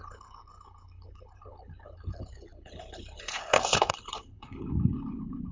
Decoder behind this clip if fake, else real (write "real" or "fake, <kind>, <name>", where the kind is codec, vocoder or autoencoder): fake, codec, HILCodec